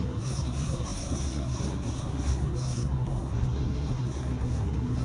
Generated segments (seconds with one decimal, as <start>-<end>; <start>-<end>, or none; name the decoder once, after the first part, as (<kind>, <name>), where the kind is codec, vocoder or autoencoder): 0.0-5.0 (codec, SNAC)